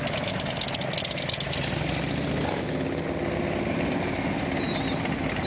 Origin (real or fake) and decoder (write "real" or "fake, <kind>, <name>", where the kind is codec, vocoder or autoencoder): real